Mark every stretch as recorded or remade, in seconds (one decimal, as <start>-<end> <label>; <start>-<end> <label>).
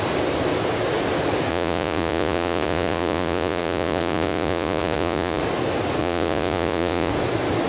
0.0-1.5 recorded; 1.5-5.4 remade; 5.4-6.0 recorded; 6.0-7.1 remade; 7.1-7.7 recorded